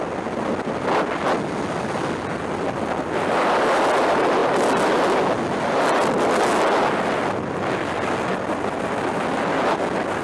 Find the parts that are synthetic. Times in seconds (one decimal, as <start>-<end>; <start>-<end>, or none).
none